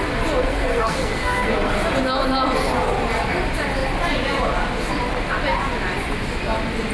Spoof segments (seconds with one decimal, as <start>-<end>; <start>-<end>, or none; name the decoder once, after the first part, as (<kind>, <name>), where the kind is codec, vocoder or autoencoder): 0.4-1.7 (codec, SNAC)